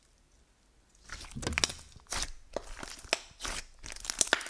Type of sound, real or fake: real